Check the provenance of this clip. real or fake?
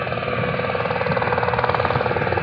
real